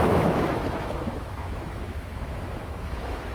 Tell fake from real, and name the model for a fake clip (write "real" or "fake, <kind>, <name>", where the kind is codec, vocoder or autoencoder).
fake, autoencoder, DAC-VAE